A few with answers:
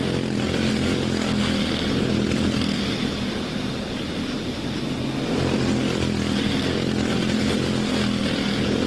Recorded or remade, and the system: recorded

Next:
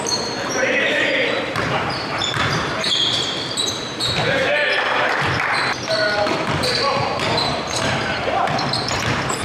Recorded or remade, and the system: remade, vocoder, BigVGAN v2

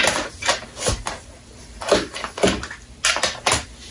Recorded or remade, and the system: recorded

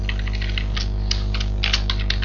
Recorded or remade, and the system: recorded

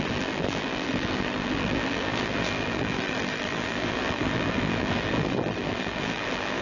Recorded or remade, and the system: remade, vocoder, BigVGAN v2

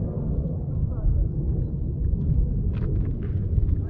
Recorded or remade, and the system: recorded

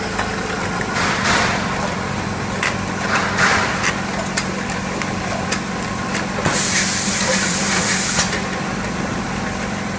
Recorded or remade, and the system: remade, vocoder, BigVGAN v2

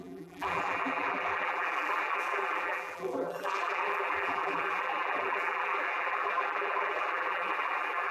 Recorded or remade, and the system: remade, vocoder, BigVGAN v2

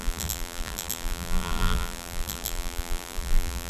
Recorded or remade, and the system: remade, vocoder, BigVGAN v2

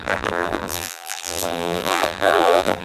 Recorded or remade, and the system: remade, vocoder, BigVGAN v2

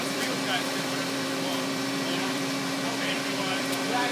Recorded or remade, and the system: remade, vocoder, BigVGAN v2